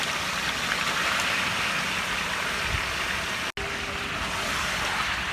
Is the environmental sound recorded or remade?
recorded